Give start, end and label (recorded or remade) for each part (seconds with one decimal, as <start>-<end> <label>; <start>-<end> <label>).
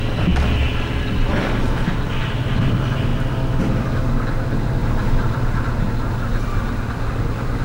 0.0-4.8 recorded; 4.8-5.7 remade; 5.7-7.6 recorded